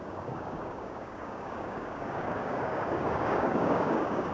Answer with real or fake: fake